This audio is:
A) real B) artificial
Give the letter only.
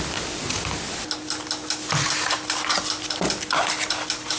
A